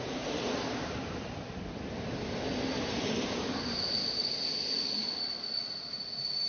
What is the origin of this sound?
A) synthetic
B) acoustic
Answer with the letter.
B